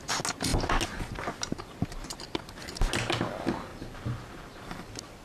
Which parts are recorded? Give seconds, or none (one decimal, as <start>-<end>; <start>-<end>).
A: 0.0-3.7; 4.8-5.2